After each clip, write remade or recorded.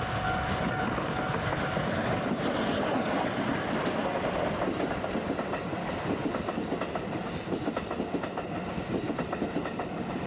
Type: recorded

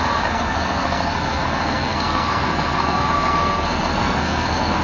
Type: remade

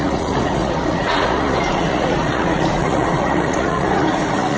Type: remade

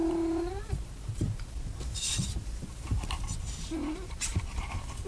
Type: remade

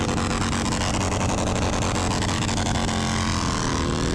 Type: recorded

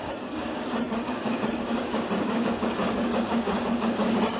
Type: remade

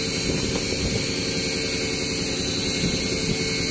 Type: recorded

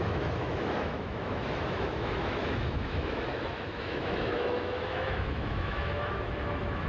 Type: remade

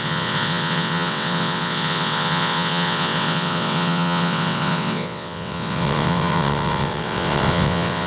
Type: remade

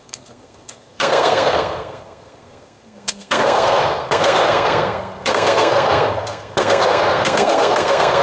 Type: remade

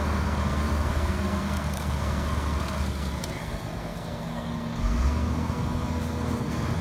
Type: remade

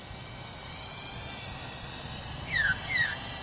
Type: remade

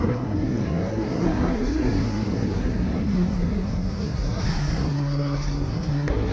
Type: remade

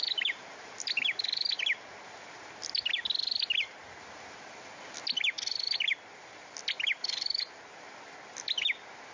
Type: recorded